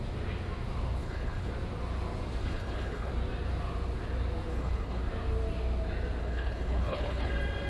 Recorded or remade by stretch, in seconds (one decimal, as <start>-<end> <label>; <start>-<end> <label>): 0.0-1.0 recorded; 1.0-1.5 remade; 1.5-2.4 recorded; 2.4-3.1 remade; 3.1-4.5 recorded; 4.5-5.0 remade; 5.0-6.2 recorded; 6.2-7.3 remade; 7.3-7.7 recorded